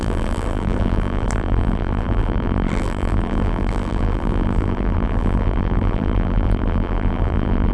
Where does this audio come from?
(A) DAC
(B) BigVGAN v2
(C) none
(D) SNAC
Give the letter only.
B